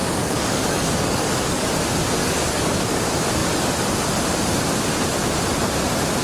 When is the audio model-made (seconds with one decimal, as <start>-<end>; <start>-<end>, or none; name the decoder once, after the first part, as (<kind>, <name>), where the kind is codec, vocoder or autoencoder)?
0.0-1.7 (codec, DAC); 2.2-3.0